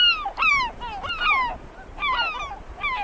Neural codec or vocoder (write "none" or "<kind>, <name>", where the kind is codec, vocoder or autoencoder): none